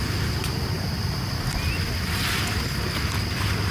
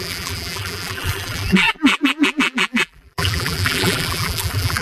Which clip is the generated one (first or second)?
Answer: second